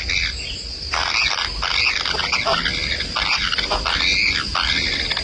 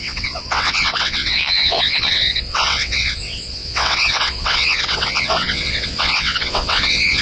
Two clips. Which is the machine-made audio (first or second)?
second